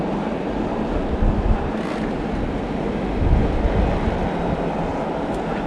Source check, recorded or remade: recorded